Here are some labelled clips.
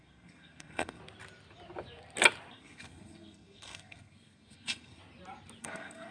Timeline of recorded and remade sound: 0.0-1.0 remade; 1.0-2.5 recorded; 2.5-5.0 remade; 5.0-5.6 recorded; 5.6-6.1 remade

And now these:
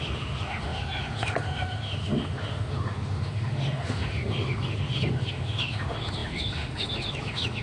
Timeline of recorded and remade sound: 0.0-7.6 remade

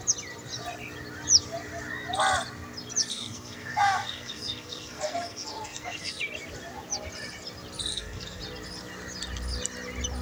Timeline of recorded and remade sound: 0.0-3.1 recorded; 3.1-6.2 remade; 6.2-7.9 recorded; 7.9-8.4 remade; 8.4-10.2 recorded